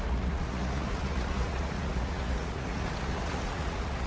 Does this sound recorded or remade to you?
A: remade